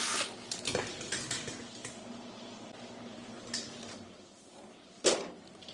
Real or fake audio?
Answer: real